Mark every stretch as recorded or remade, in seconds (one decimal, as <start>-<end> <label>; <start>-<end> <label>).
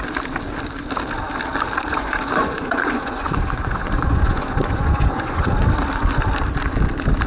0.0-1.9 recorded; 1.9-5.5 remade; 5.5-7.3 recorded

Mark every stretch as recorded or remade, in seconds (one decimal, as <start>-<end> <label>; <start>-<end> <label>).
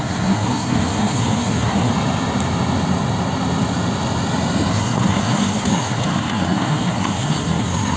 0.0-1.9 remade; 1.9-4.7 recorded; 4.7-8.0 remade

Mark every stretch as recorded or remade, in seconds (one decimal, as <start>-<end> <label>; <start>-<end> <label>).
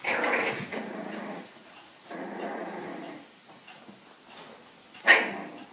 0.0-0.7 recorded; 0.7-3.8 remade; 3.8-5.7 recorded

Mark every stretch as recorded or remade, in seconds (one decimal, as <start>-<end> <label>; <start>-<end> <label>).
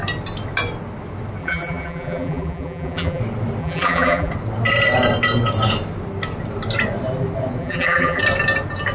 0.0-1.4 recorded; 1.4-3.2 remade; 3.2-3.6 recorded; 3.6-4.3 remade; 4.3-7.6 recorded; 7.6-8.2 remade; 8.2-8.9 recorded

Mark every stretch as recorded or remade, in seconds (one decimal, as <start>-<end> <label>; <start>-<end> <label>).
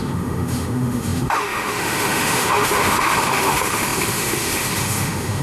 0.0-5.4 remade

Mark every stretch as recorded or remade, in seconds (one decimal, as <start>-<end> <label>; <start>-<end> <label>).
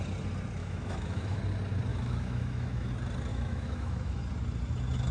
0.0-0.6 recorded; 0.6-1.4 remade; 1.4-1.9 recorded; 1.9-2.9 remade; 2.9-3.3 recorded; 3.3-4.2 remade; 4.2-5.1 recorded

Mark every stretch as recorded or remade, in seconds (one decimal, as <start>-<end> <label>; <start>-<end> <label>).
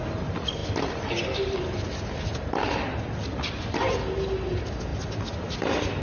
0.0-4.9 recorded; 4.9-6.0 remade